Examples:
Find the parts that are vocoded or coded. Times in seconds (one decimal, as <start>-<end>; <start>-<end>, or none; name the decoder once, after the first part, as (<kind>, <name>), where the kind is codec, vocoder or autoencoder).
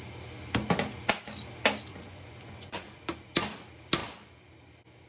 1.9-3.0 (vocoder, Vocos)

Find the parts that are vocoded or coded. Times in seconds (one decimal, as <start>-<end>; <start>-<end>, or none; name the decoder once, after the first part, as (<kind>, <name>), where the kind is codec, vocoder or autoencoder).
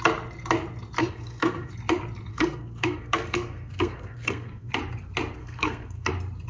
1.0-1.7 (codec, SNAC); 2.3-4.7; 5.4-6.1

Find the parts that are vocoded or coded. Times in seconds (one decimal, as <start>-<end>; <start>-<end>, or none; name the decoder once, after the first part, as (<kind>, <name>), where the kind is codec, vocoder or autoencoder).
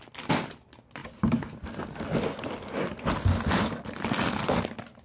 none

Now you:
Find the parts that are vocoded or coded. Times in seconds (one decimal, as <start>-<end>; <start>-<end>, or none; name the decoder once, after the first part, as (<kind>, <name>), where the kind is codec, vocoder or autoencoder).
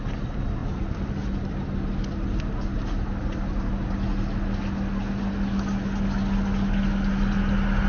0.6-1.1 (vocoder, BigVGAN v2)